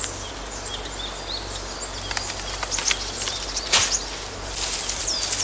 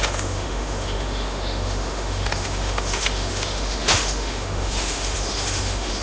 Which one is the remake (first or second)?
second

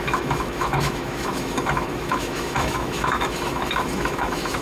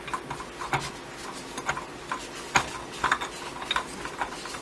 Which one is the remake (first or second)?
first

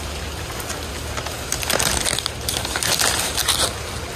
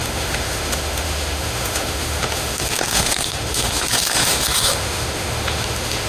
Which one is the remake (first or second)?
second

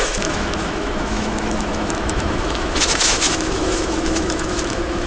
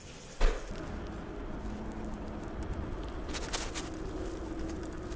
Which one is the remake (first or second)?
first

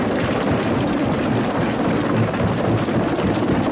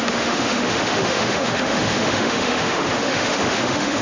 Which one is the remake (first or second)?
second